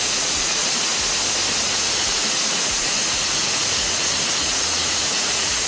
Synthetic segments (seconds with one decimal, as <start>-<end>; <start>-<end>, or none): 0.0-0.9; 1.6-5.7